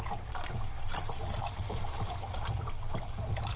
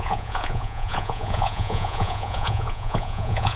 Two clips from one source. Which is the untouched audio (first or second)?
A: first